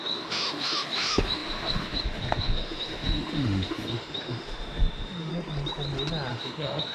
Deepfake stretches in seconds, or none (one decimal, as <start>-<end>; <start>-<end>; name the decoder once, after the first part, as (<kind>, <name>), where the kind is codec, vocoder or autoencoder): 0.0-5.3 (autoencoder, DAC-VAE); 6.3-6.9